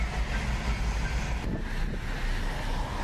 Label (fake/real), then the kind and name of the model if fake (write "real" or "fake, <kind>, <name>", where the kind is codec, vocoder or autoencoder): real